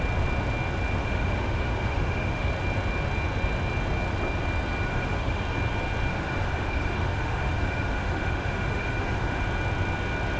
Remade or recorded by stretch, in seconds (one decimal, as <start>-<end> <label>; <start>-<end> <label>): 0.0-1.0 recorded; 1.0-2.5 remade; 2.5-4.9 recorded; 4.9-5.4 remade; 5.4-6.1 recorded; 6.1-9.4 remade; 9.4-10.4 recorded